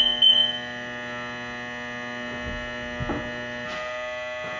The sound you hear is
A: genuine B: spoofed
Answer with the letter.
A